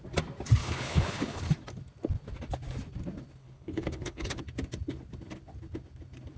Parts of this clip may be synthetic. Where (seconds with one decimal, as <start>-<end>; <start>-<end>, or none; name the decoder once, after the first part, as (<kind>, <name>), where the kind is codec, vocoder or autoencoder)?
0.6-1.4 (codec, HILCodec); 3.4-4.4